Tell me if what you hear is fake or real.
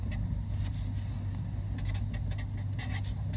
real